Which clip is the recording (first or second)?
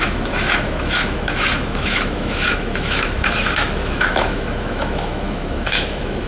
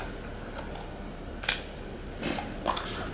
second